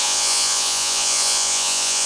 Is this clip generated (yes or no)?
yes